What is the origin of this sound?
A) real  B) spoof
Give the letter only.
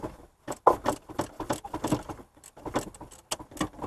A